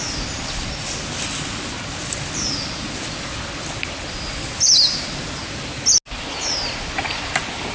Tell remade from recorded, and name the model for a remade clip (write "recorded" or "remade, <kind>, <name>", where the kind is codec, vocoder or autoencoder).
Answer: recorded